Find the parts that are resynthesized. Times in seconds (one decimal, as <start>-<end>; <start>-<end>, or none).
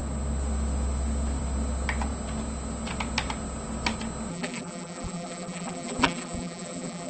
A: 4.3-7.1